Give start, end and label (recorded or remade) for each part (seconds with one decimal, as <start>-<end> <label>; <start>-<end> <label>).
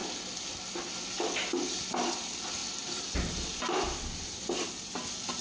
0.0-2.6 recorded; 2.6-4.7 remade; 4.7-5.4 recorded